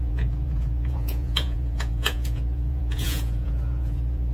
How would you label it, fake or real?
fake